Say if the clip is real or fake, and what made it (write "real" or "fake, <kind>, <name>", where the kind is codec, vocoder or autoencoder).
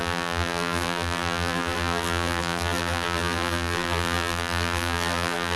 fake, vocoder, BigVGAN v2